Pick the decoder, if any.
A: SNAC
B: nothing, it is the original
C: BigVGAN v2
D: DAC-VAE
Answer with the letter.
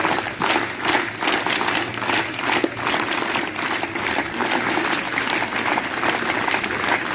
B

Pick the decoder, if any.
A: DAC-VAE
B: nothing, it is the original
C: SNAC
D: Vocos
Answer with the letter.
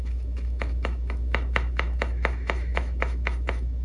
A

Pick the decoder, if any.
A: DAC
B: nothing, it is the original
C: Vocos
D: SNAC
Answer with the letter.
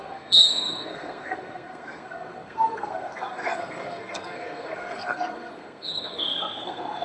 D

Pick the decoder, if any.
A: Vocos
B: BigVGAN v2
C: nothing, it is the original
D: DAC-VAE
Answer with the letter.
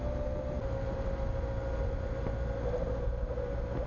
C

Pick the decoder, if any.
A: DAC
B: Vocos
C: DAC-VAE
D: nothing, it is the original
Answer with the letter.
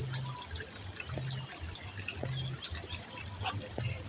D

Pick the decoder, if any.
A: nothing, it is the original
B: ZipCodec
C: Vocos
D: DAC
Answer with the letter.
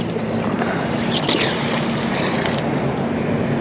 A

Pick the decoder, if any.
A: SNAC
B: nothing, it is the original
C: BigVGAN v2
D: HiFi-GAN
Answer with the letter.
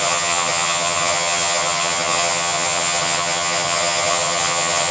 D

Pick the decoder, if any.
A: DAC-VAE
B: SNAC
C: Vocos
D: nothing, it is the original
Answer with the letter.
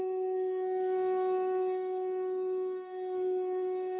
B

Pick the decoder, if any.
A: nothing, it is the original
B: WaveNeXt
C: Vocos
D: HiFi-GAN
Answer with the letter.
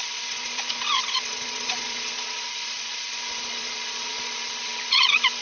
C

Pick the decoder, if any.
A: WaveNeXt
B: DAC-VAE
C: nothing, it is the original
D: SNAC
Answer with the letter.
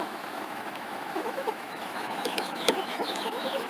B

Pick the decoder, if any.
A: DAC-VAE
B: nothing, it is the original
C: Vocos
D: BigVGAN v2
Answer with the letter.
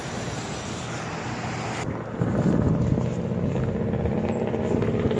B